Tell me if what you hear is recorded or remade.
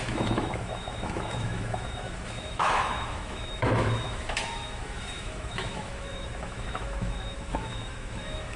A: remade